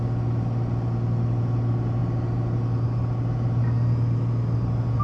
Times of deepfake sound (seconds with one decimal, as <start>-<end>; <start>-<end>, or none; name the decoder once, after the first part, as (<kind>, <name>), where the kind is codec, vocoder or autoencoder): none